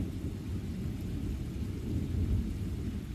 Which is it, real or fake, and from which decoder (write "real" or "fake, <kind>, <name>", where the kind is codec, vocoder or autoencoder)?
real